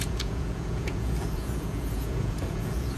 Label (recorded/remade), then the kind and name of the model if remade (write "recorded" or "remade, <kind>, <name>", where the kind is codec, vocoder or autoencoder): remade, vocoder, Vocos